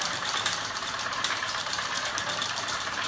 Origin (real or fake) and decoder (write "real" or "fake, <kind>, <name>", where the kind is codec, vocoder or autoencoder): fake, vocoder, BigVGAN v2